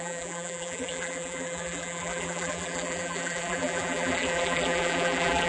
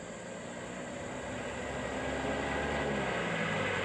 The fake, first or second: first